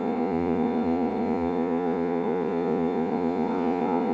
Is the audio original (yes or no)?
no